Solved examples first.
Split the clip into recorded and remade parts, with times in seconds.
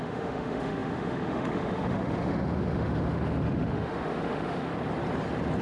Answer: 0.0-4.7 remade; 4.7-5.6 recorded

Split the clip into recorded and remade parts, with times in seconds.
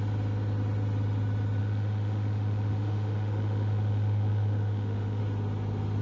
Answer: 0.0-1.6 recorded; 1.6-5.2 remade; 5.2-6.0 recorded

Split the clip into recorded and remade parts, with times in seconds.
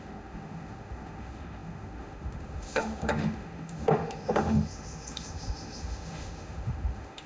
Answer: 0.0-7.3 remade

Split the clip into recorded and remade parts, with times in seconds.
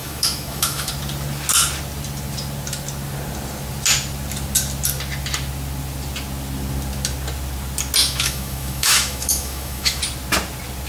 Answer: 0.0-0.9 remade; 0.9-8.0 recorded; 8.0-10.0 remade; 10.0-10.9 recorded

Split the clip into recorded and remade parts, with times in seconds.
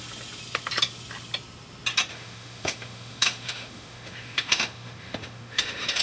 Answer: 0.0-2.1 recorded; 2.1-6.0 remade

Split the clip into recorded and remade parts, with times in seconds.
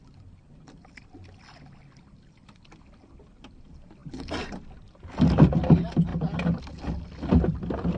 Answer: 0.0-8.0 recorded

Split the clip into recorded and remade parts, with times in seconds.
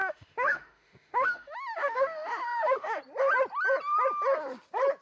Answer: 0.0-3.0 remade; 3.0-5.0 recorded